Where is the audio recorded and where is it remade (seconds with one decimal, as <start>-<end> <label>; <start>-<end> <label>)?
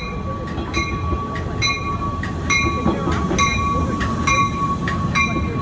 0.0-5.6 recorded